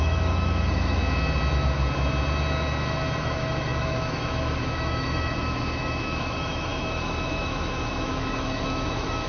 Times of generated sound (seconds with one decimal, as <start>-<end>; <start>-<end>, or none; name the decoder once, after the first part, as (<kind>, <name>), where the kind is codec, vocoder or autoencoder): 0.0-1.0 (autoencoder, DAC-VAE); 3.2-9.3